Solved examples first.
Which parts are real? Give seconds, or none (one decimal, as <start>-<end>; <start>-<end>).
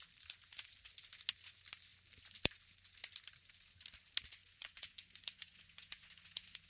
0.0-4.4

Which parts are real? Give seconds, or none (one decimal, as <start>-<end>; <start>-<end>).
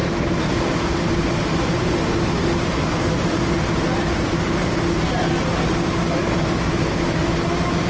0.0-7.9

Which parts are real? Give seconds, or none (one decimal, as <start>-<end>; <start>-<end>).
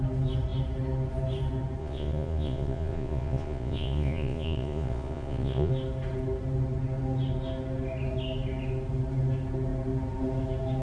0.0-1.8; 5.7-10.8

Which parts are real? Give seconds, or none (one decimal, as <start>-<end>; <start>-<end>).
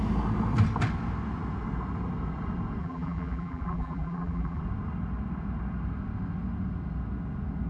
0.0-2.8; 4.6-7.7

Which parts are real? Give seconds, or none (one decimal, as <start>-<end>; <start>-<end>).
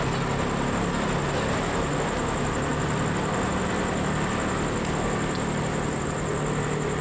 0.0-7.0